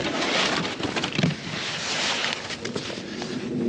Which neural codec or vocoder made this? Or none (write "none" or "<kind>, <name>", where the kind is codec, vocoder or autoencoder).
none